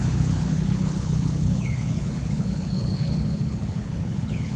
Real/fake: fake